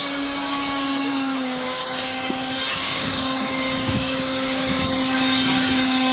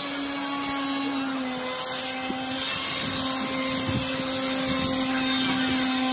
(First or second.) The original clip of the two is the second